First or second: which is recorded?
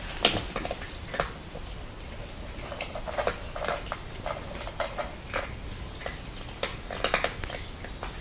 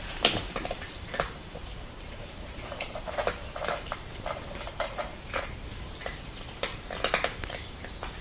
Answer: first